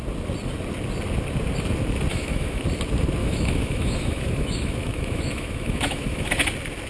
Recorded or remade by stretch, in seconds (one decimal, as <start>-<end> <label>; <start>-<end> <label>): 0.0-2.1 recorded; 2.1-2.6 remade; 2.6-3.2 recorded; 3.2-6.3 remade; 6.3-6.9 recorded